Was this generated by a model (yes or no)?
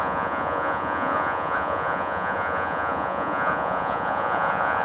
yes